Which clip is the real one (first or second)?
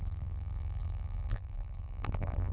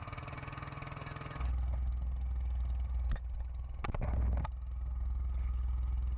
second